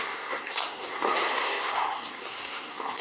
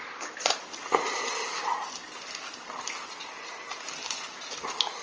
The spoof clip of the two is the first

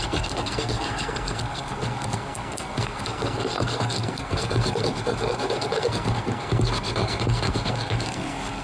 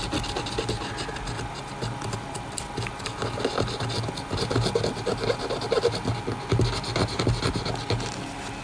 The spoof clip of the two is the first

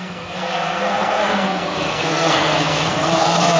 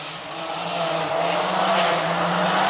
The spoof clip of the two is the first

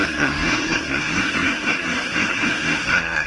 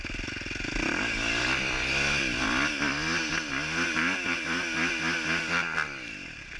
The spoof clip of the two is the first